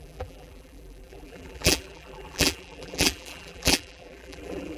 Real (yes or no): no